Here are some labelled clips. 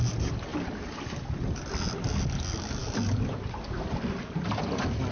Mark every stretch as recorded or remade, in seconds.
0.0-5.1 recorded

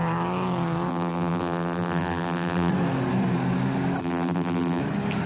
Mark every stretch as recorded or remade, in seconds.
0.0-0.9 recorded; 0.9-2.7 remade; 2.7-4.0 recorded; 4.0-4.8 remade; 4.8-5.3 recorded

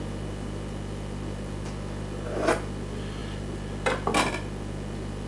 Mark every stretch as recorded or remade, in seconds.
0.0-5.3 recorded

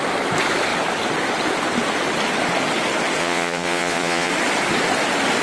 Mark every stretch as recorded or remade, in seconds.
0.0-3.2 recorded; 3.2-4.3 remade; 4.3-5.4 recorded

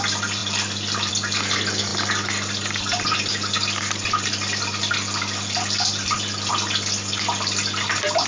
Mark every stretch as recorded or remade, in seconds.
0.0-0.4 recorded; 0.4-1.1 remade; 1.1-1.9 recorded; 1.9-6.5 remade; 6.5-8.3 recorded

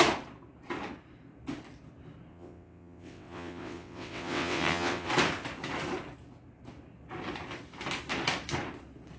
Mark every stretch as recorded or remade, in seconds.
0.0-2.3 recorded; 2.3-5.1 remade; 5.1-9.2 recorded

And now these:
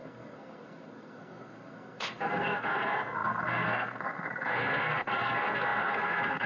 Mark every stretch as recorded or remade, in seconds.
0.0-6.5 remade